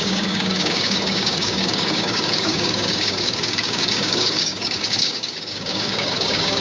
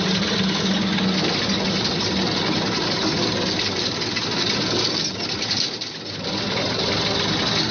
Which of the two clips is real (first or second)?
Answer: second